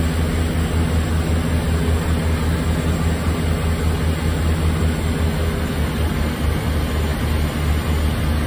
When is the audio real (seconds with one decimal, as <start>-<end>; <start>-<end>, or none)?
0.0-8.5